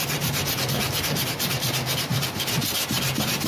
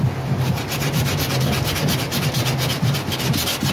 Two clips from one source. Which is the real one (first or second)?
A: second